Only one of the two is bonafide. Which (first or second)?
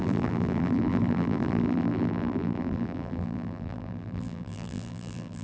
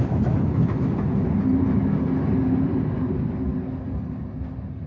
second